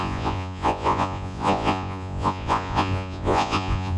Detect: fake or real fake